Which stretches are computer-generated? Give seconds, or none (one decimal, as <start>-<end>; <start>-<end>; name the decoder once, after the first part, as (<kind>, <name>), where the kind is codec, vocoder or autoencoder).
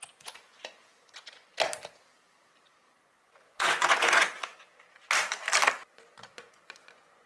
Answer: 0.0-1.5 (vocoder, Vocos); 3.0-4.5; 5.9-7.3